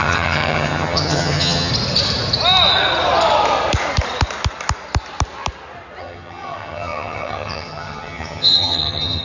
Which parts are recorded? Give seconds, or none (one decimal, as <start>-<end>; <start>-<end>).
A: 1.7-6.0